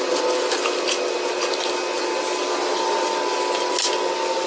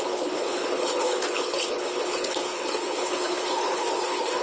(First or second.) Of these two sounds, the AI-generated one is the second